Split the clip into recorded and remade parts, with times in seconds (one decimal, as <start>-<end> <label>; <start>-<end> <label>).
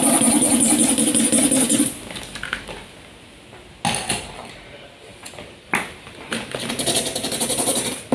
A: 0.0-8.1 recorded